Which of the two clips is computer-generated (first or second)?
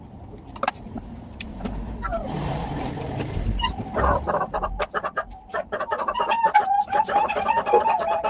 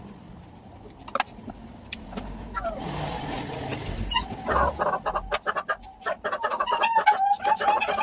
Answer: first